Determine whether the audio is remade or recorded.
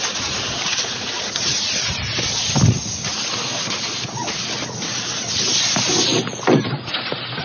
recorded